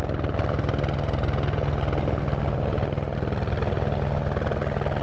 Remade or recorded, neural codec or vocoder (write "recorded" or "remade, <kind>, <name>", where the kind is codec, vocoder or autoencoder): recorded